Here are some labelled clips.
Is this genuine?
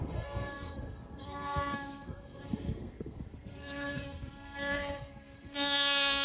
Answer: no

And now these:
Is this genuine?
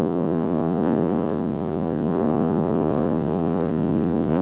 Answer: no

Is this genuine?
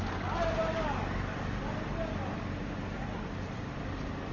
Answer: yes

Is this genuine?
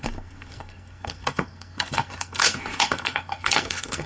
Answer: no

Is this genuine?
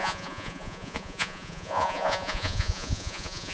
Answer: no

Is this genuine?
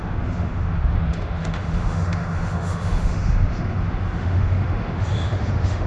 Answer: no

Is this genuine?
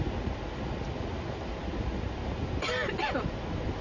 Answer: yes